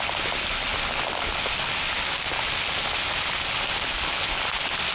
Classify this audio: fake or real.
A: real